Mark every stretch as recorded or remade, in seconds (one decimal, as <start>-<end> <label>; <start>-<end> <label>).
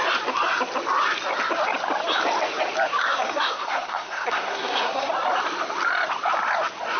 0.0-3.0 recorded; 3.0-5.1 remade; 5.1-7.0 recorded